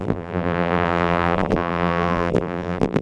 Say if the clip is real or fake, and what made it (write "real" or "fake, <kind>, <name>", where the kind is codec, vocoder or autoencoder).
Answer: fake, vocoder, BigVGAN v2